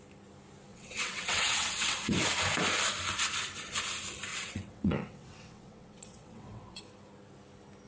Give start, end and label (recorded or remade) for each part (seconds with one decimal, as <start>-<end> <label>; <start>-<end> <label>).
0.0-0.7 recorded; 0.7-2.1 remade; 2.1-4.3 recorded; 4.3-6.8 remade; 6.8-7.9 recorded